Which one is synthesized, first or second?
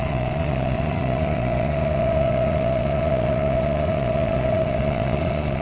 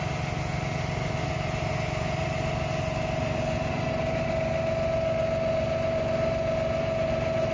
first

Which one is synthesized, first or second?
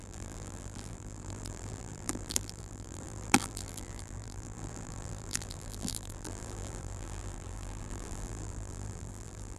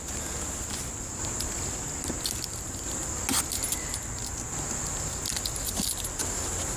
first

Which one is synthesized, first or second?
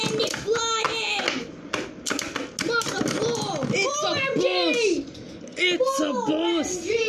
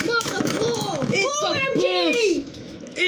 second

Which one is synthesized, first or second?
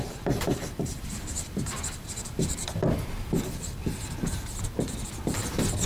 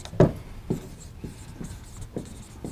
first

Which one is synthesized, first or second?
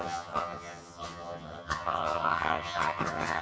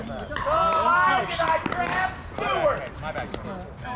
first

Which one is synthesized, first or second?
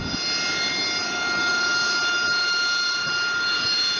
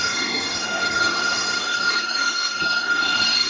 second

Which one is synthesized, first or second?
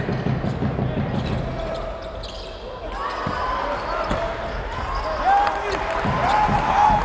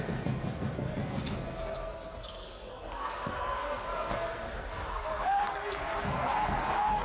second